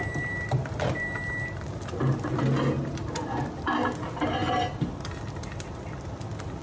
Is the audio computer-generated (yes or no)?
no